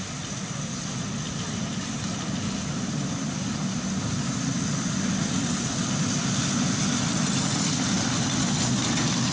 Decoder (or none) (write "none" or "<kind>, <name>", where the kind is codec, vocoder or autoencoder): none